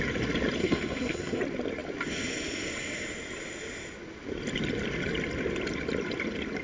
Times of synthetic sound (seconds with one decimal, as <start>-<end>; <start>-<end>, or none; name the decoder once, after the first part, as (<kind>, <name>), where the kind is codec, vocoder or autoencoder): 0.6-1.4 (codec, SNAC)